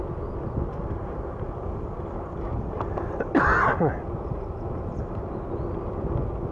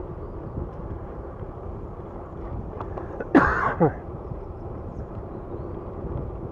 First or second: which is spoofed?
second